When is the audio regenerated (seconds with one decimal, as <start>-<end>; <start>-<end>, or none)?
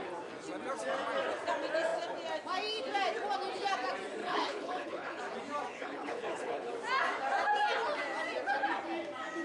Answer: 4.2-5.2; 5.7-6.7